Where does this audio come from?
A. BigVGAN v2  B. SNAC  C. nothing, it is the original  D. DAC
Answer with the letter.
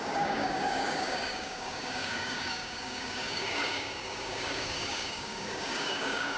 D